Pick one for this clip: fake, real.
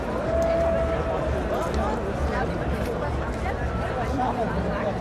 real